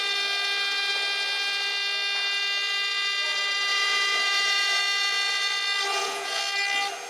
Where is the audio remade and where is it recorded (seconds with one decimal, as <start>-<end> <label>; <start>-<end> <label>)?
0.0-3.7 recorded; 3.7-4.8 remade; 4.8-5.9 recorded; 5.9-6.4 remade; 6.4-7.1 recorded